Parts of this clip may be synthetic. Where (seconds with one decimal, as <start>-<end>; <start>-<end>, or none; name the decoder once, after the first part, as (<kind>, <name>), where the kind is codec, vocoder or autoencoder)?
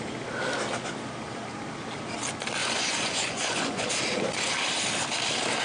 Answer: 2.6-3.9 (vocoder, Vocos)